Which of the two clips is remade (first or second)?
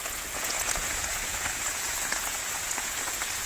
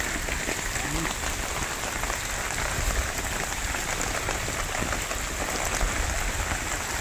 first